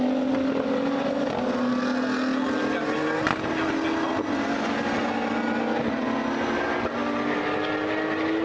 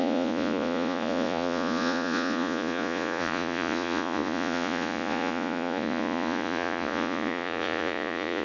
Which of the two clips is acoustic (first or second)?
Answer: first